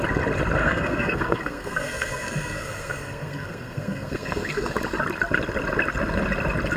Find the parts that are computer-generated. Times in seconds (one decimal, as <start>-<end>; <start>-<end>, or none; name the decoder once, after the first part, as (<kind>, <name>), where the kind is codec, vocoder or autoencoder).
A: 0.6-4.7 (codec, SNAC)